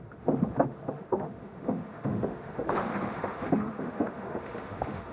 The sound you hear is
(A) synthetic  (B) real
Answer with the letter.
A